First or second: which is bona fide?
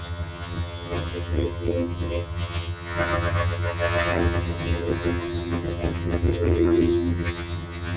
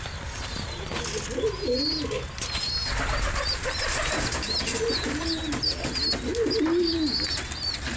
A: second